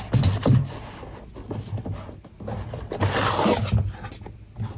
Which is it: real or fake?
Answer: real